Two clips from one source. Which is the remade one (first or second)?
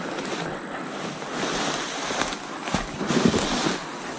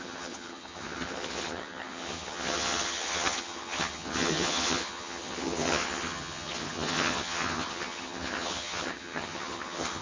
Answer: second